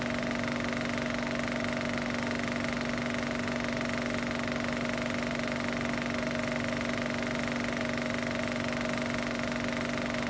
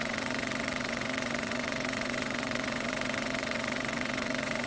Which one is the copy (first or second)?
second